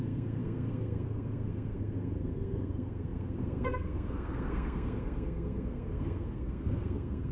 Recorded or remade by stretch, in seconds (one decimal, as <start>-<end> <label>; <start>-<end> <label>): 0.0-7.3 remade